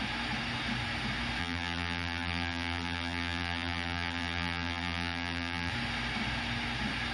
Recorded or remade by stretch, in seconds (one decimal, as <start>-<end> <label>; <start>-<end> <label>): 0.0-1.4 recorded; 1.4-5.7 remade; 5.7-7.1 recorded